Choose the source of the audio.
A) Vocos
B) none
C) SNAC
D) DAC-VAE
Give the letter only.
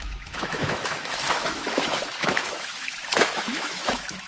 D